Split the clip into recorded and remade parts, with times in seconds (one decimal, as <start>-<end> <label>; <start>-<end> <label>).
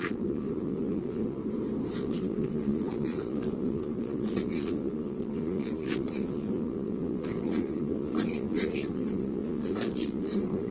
0.0-1.4 remade; 1.4-2.0 recorded; 2.0-10.7 remade